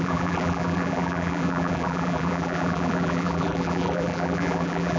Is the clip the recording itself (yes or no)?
no